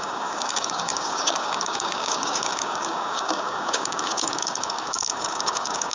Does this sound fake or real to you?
fake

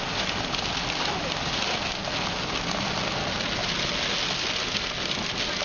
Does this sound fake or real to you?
real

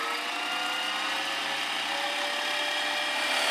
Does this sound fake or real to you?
real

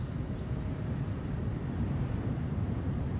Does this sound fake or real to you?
real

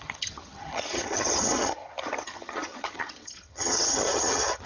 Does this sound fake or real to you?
fake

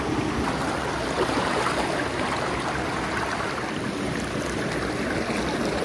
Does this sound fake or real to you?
real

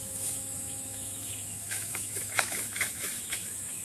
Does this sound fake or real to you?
fake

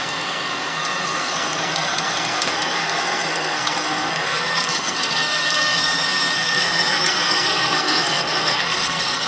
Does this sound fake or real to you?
fake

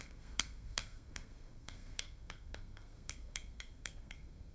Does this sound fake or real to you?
fake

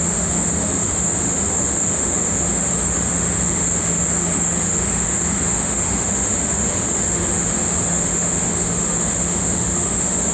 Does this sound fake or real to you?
fake